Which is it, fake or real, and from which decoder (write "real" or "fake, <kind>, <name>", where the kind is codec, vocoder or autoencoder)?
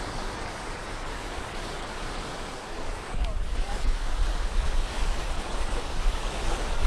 fake, codec, DAC